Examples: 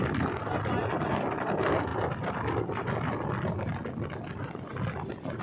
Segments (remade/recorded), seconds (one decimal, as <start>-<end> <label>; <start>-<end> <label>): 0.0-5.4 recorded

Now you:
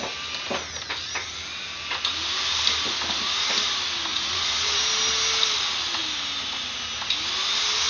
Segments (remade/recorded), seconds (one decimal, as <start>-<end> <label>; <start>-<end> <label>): 0.0-4.1 recorded; 4.1-4.8 remade; 4.8-7.9 recorded

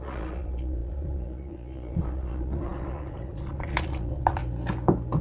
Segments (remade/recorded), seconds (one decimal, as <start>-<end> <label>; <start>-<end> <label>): 0.0-4.4 remade; 4.4-5.2 recorded